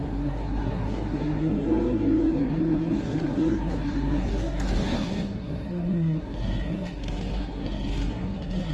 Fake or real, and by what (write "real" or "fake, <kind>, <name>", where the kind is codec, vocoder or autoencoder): fake, codec, SNAC